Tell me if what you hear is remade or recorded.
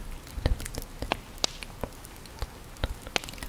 recorded